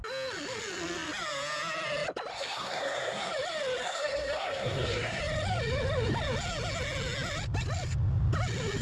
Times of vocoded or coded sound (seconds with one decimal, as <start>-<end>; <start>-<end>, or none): 2.3-3.3; 3.8-5.2